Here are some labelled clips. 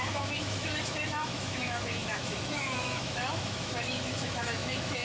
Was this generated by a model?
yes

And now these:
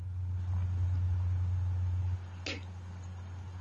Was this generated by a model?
no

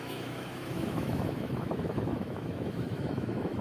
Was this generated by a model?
yes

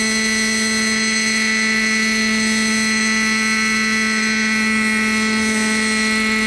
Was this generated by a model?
no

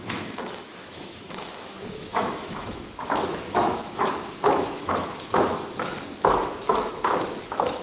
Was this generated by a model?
yes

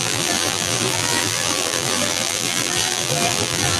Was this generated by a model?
yes